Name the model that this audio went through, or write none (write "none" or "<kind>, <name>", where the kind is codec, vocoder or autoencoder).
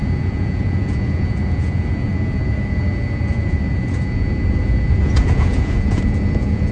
vocoder, Vocos